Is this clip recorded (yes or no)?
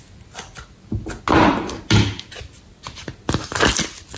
yes